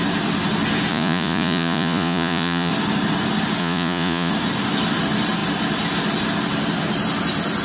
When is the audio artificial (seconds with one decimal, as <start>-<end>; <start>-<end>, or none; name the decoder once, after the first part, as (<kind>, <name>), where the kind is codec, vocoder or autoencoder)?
0.9-2.7 (vocoder, Vocos); 3.6-4.3